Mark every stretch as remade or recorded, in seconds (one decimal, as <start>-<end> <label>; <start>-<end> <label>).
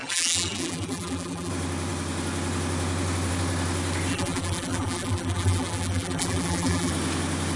0.0-1.5 remade; 1.5-4.1 recorded; 4.1-6.9 remade; 6.9-7.6 recorded